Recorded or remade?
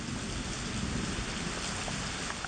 recorded